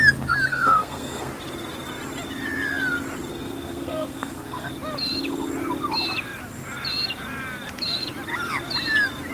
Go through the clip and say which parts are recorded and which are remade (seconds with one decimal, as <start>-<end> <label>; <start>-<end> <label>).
0.0-0.5 recorded; 0.5-1.3 remade; 1.3-3.3 recorded; 3.3-4.7 remade; 4.7-9.3 recorded